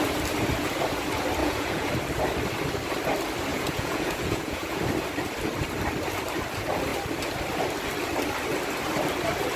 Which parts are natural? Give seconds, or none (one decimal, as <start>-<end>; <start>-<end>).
0.0-1.4; 1.9-3.5; 4.8-9.6